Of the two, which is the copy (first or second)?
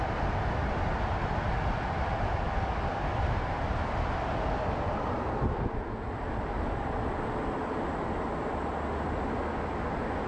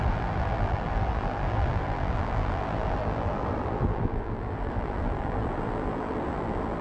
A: second